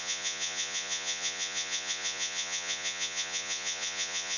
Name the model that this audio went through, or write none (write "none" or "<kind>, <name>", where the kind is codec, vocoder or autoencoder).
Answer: vocoder, Vocos